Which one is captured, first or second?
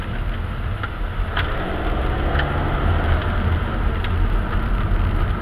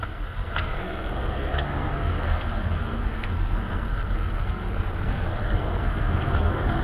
first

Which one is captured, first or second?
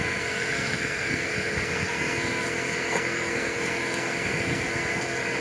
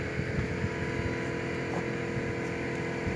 second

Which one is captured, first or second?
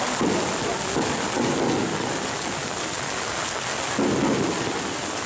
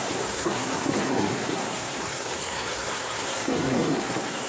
first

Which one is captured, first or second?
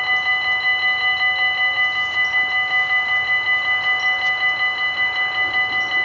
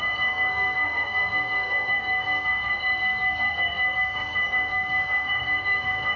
first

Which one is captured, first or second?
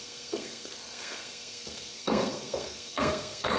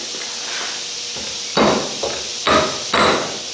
second